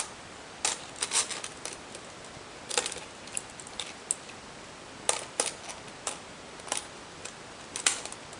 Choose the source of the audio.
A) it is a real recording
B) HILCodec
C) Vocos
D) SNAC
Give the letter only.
A